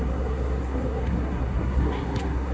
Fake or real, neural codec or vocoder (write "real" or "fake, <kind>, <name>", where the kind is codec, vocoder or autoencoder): fake, codec, SNAC